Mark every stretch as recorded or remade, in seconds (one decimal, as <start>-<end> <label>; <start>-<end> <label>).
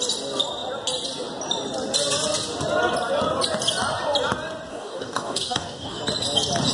0.0-4.7 recorded; 4.7-6.0 remade; 6.0-6.7 recorded